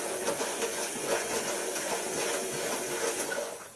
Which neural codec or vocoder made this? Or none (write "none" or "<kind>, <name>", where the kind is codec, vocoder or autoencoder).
vocoder, Vocos